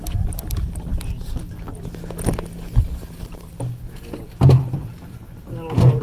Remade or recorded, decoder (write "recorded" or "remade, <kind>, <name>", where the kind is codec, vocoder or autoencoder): recorded